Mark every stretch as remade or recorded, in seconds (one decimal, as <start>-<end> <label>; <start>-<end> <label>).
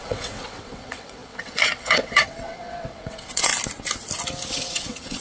0.0-3.5 remade; 3.5-4.5 recorded; 4.5-5.2 remade